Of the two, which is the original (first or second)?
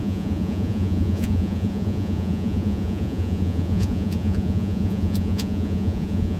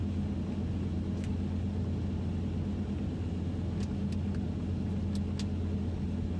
second